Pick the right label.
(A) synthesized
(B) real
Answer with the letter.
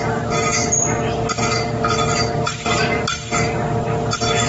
B